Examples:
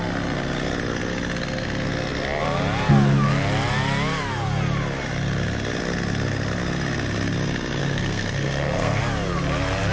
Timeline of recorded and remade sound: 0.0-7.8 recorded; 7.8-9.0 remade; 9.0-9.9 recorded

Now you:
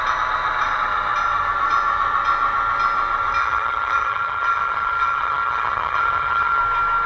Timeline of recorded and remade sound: 0.0-3.4 recorded; 3.4-6.6 remade; 6.6-7.1 recorded

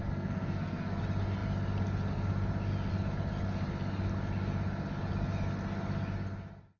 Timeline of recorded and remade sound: 0.0-1.0 remade; 1.0-6.8 recorded

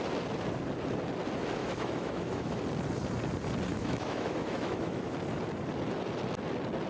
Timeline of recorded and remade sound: 0.0-1.6 recorded; 1.6-2.6 remade; 2.6-3.7 recorded; 3.7-5.1 remade; 5.1-6.9 recorded

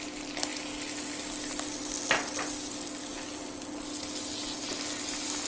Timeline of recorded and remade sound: 0.0-5.5 recorded

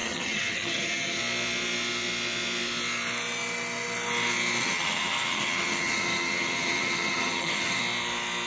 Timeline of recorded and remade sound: 0.0-1.2 remade; 1.2-4.6 recorded; 4.6-7.8 remade; 7.8-8.5 recorded

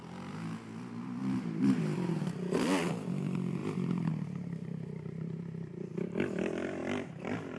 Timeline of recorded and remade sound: 0.0-1.2 recorded; 1.2-1.7 remade; 1.7-3.6 recorded; 3.6-4.1 remade; 4.1-4.6 recorded; 4.6-5.7 remade; 5.7-6.8 recorded; 6.8-7.6 remade

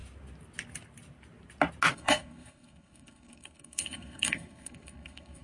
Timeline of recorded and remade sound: 0.0-1.9 recorded; 1.9-5.4 remade